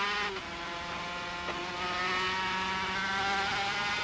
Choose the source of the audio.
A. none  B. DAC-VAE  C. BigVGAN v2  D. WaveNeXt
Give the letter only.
A